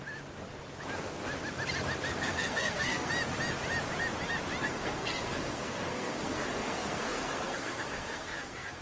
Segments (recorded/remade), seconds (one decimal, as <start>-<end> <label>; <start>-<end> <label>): 0.0-2.1 recorded; 2.1-3.1 remade; 3.1-4.6 recorded; 4.6-8.8 remade